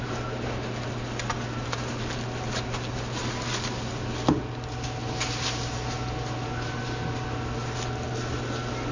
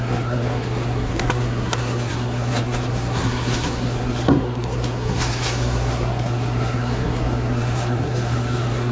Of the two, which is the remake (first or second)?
second